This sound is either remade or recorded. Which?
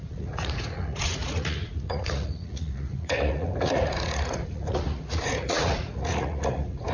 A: remade